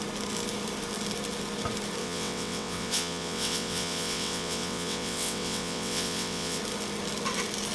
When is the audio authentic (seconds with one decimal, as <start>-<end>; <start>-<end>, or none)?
0.0-2.0; 6.6-7.7